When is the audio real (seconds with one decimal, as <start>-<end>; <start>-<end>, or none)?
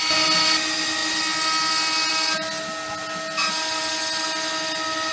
0.0-5.1